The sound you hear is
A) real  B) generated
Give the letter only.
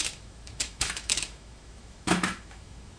B